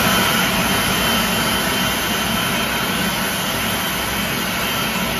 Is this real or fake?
real